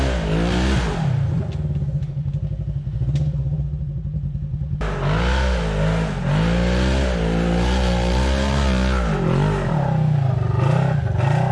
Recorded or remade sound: recorded